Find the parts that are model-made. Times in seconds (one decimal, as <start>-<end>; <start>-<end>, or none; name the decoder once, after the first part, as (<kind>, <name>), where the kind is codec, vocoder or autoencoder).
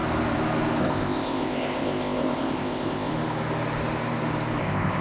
0.8-3.1 (codec, ZipCodec); 4.6-5.0